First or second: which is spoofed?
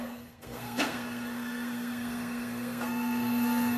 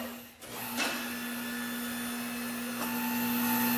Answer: first